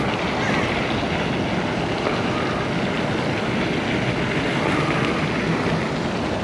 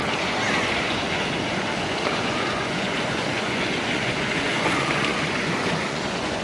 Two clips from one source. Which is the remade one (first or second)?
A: second